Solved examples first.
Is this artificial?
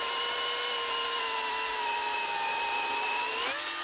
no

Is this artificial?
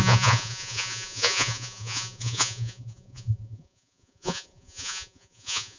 yes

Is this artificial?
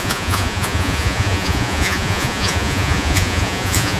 yes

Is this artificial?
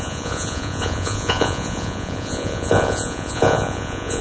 yes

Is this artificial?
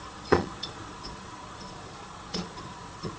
yes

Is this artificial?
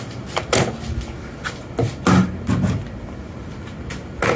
no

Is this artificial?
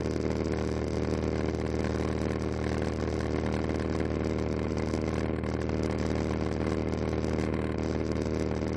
no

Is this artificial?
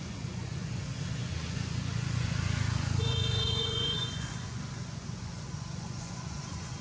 yes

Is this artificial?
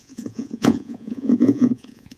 yes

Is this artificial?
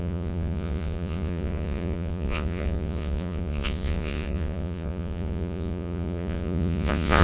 yes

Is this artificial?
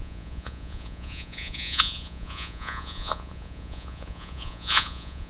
yes